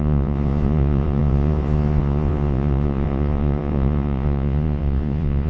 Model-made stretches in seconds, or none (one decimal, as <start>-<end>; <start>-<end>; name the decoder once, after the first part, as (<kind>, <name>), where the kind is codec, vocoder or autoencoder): 0.0-5.5 (vocoder, Vocos)